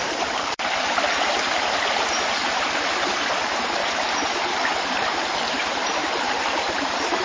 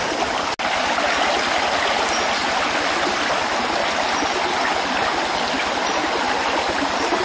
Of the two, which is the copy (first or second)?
first